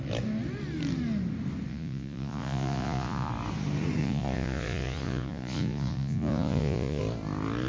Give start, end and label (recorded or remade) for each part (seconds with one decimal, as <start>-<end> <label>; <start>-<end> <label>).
0.0-1.7 recorded; 1.7-3.3 remade; 3.3-4.0 recorded; 4.0-7.0 remade; 7.0-7.7 recorded